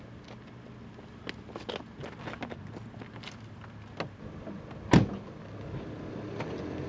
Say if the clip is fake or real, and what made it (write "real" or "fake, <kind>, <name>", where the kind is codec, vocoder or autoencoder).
real